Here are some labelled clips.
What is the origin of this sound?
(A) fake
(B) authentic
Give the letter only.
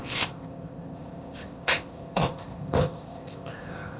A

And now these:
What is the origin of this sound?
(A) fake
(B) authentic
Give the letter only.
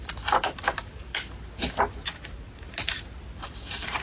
B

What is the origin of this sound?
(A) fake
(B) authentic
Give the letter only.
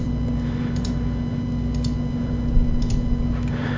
B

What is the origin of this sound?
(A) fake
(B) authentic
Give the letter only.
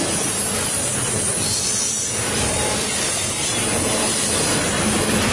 B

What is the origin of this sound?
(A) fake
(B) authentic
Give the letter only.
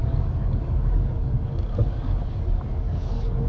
A